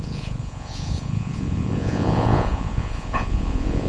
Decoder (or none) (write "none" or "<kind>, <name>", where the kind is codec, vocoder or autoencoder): vocoder, Vocos